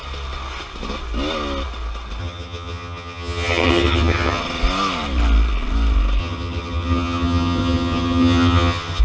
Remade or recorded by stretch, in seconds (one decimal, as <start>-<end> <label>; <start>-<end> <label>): 0.0-2.2 recorded; 2.2-4.4 remade; 4.4-6.2 recorded; 6.2-9.0 remade